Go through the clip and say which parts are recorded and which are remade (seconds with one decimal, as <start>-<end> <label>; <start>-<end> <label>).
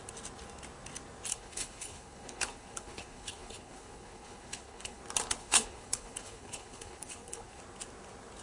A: 0.0-1.3 recorded; 1.3-5.0 remade; 5.0-5.4 recorded; 5.4-7.6 remade; 7.6-8.4 recorded